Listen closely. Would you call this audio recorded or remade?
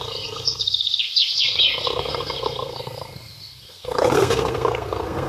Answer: remade